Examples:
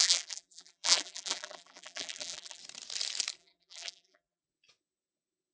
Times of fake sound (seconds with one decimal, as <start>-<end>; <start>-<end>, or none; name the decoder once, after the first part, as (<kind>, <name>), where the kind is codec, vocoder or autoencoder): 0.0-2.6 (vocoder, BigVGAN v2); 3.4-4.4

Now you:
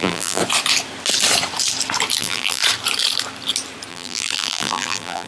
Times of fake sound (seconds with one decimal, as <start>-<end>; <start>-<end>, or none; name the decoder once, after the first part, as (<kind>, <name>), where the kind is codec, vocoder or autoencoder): 0.0-0.4 (vocoder, BigVGAN v2); 2.2-2.6; 3.9-5.3

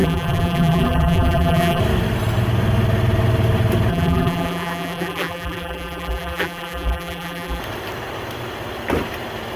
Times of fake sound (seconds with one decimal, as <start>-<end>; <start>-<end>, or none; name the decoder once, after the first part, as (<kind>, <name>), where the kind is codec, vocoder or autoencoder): 0.0-1.8 (vocoder, BigVGAN v2); 3.9-7.6